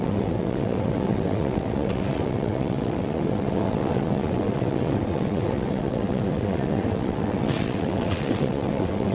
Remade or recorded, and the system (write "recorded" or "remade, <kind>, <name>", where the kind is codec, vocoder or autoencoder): remade, vocoder, WaveNeXt